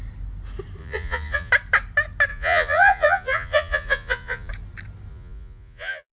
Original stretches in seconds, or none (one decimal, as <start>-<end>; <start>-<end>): 0.0-0.8; 1.5-2.3; 4.5-5.1